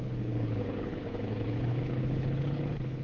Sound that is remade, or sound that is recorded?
remade